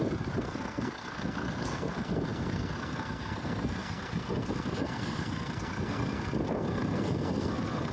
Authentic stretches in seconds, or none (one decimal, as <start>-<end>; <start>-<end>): none

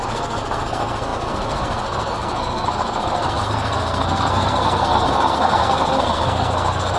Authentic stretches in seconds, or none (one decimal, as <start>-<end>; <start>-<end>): none

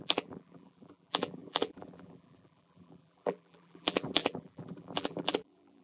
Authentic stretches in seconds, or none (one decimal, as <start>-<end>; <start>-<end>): none

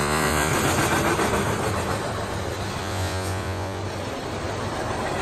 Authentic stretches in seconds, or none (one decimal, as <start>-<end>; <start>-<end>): 0.5-2.8; 3.8-5.2

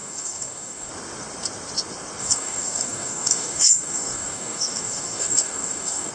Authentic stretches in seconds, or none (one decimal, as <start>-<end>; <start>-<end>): 0.9-2.2

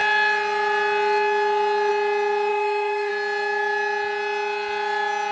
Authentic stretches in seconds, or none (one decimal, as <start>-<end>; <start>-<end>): 0.0-2.5; 3.1-5.3

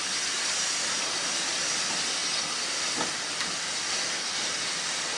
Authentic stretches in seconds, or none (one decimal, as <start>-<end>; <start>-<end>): 0.0-5.2